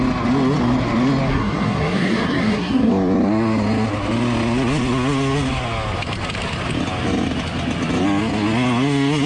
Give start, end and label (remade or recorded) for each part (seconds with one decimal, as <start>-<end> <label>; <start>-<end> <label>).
0.0-1.3 recorded; 1.3-2.9 remade; 2.9-9.3 recorded